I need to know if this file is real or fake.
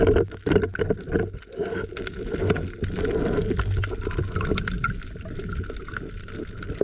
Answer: real